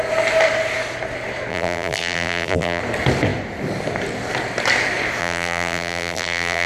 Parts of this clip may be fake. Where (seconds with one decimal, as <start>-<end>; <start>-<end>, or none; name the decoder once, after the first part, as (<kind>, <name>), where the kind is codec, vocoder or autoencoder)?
1.5-2.8 (vocoder, BigVGAN v2); 5.2-6.7